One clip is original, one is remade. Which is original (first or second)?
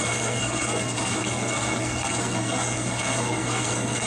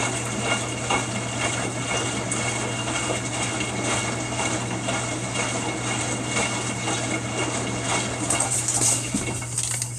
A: second